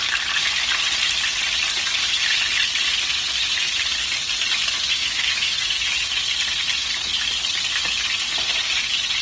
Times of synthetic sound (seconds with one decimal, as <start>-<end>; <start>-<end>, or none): 5.0-5.9

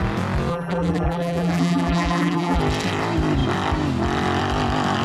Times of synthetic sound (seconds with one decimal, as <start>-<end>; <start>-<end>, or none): 0.5-2.6

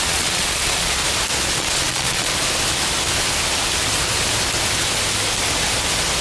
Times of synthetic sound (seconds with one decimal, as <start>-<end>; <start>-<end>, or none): 0.0-1.0; 1.5-2.3